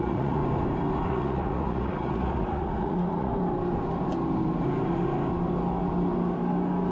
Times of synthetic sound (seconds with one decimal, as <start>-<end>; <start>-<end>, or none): 0.0-0.4; 1.1-3.3